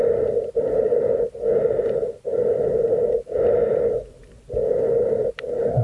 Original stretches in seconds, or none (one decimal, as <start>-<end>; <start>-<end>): 0.0-5.8